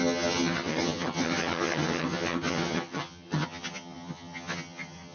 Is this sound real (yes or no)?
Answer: no